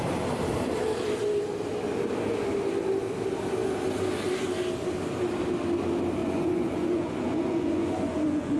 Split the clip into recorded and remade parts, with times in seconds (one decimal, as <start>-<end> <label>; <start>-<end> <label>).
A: 0.0-6.2 recorded; 6.2-8.6 remade